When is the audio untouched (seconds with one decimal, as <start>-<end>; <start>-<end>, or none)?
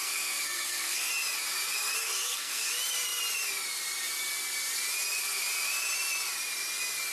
1.1-2.0; 2.7-7.1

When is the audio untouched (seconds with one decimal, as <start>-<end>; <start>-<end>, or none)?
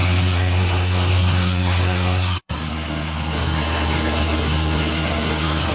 none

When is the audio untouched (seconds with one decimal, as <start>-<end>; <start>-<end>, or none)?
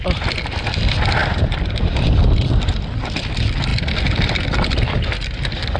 0.0-5.8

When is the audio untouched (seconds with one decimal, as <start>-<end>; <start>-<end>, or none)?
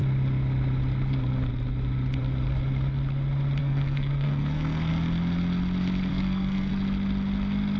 0.0-3.6; 4.9-6.1; 6.7-7.8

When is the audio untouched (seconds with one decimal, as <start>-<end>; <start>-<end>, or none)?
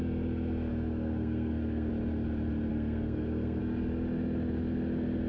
0.0-0.7; 1.9-2.7; 3.6-5.3